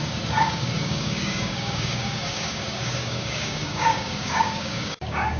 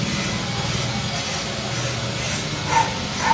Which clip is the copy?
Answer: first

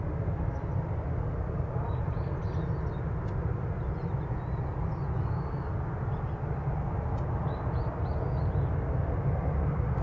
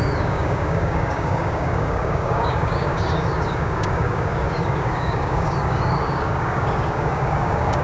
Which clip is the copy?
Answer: second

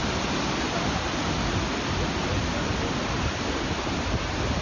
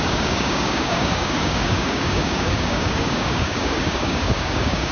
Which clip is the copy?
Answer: second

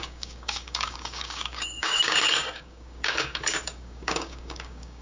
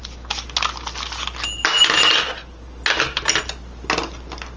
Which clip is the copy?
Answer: first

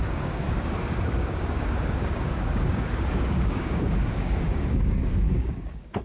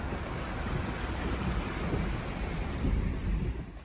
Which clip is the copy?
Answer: first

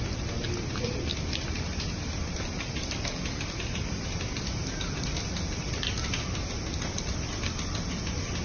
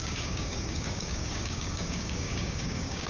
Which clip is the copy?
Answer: second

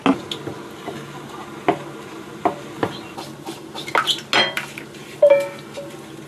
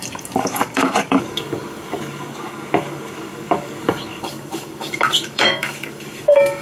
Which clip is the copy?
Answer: second